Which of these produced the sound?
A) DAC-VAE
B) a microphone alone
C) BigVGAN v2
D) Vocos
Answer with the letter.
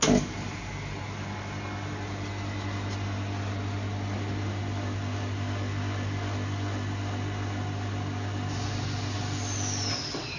B